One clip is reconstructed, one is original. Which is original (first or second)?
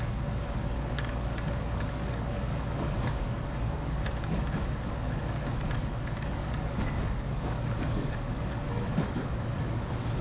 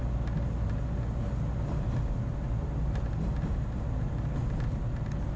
second